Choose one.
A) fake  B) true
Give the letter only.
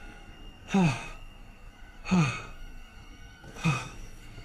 A